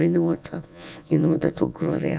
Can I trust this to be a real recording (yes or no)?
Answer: no